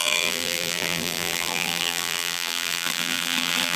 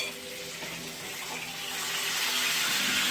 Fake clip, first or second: first